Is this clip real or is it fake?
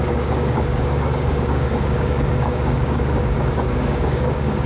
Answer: fake